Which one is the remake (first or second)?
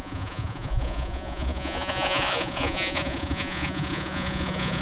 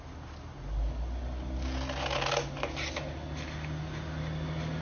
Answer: first